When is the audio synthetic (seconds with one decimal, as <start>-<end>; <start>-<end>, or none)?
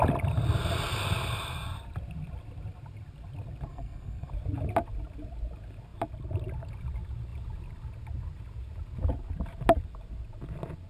3.7-4.3